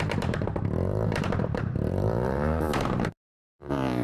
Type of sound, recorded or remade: remade